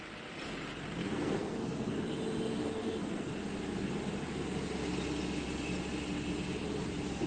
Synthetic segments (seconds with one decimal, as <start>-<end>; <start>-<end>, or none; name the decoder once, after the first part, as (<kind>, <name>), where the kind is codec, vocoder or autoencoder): 1.0-2.2 (codec, SNAC); 2.6-3.3